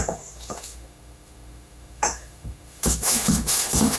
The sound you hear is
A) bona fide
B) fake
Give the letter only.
B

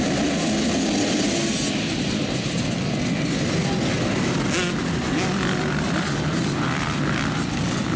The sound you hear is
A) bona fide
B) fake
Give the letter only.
A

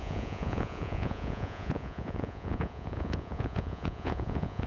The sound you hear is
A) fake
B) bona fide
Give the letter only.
A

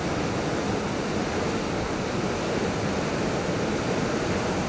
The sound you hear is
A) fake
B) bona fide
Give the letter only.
B